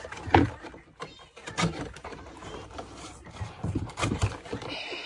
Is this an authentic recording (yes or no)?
no